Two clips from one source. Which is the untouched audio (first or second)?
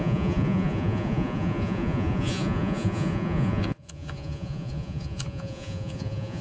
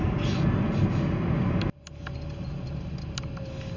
second